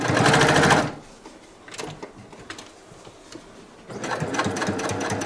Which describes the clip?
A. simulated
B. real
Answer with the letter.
B